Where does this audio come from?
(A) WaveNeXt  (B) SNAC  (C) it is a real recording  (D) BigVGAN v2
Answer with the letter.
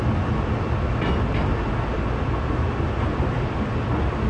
C